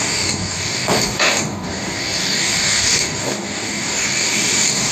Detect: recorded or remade remade